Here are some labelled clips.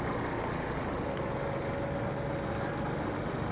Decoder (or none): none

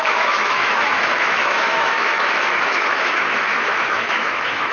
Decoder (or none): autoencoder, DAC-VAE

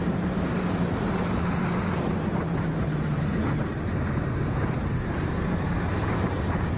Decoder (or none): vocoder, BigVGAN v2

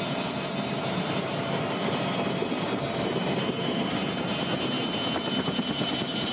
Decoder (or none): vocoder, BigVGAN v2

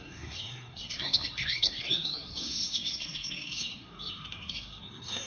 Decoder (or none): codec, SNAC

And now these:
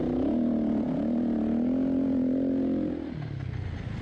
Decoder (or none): none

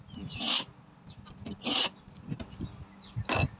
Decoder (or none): none